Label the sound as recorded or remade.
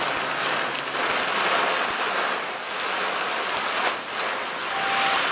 recorded